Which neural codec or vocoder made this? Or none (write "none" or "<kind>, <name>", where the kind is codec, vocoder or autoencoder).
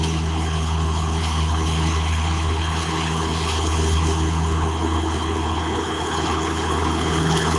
codec, HILCodec